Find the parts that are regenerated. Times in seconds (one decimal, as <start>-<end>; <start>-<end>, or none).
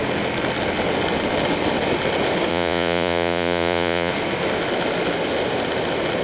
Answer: 2.5-4.1